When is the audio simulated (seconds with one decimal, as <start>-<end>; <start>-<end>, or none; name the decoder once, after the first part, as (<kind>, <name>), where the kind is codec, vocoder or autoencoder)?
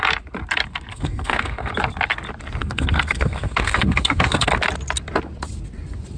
0.9-1.7 (codec, SNAC); 2.6-4.5